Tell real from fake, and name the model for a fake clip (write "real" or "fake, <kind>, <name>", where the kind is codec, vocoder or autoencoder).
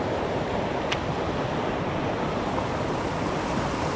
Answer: real